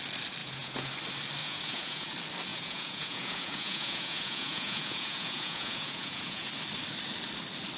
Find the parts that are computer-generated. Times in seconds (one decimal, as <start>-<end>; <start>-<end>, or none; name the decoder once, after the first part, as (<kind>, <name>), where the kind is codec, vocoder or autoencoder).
0.4-0.9 (vocoder, Vocos); 1.4-2.1; 2.5-6.5